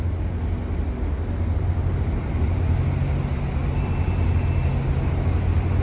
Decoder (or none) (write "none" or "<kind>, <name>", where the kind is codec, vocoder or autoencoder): none